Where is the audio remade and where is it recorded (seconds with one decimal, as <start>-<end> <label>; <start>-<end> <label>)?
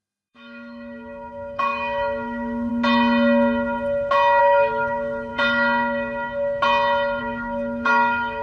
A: 0.0-2.7 remade; 2.7-4.4 recorded; 4.4-5.3 remade; 5.3-7.2 recorded; 7.2-8.4 remade